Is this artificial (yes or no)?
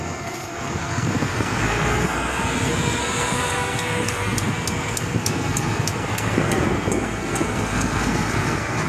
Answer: yes